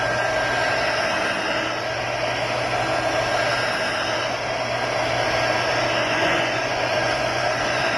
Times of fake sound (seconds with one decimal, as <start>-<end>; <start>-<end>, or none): 6.0-8.0

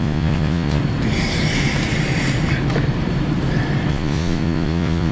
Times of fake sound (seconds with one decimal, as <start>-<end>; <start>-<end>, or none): 0.0-0.8; 3.9-5.1

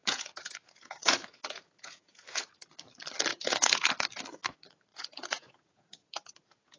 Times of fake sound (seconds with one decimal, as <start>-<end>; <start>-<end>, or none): 0.0-2.5; 3.3-3.9; 4.9-6.8

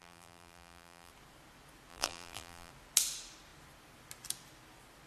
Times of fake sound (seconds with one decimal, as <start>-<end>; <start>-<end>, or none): 0.0-1.1; 1.9-2.7

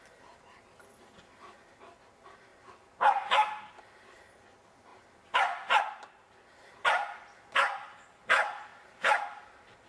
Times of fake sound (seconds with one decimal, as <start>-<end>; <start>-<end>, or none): none

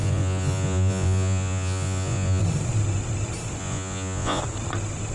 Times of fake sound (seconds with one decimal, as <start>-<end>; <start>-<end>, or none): 0.0-2.4; 3.6-4.4

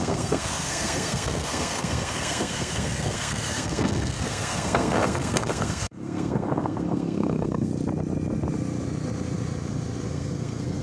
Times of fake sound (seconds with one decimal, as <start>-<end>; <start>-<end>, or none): 0.0-7.7; 10.1-10.8